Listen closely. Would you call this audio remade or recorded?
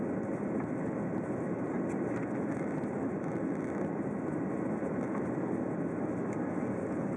recorded